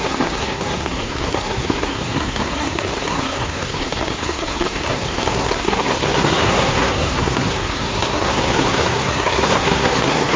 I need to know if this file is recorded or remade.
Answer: remade